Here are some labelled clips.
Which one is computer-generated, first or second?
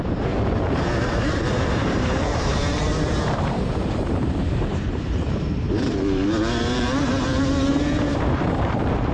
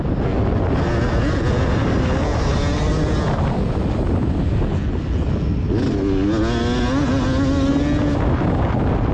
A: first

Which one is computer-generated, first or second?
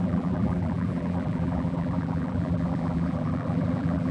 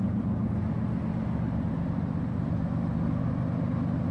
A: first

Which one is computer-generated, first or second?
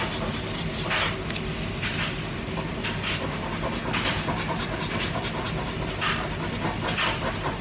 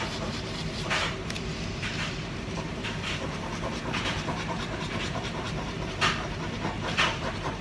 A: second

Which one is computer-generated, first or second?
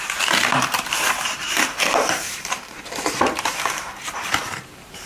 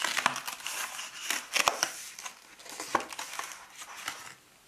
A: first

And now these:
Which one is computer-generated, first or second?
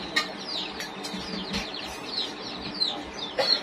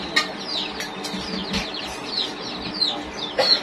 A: first